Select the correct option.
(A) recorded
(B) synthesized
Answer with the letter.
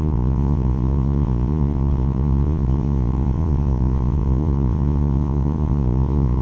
B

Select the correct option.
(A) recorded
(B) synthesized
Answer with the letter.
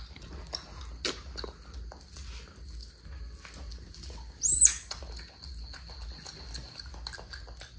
A